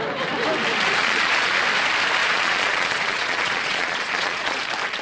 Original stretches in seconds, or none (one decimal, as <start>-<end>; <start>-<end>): 0.0-1.0; 1.6-2.2; 4.6-5.0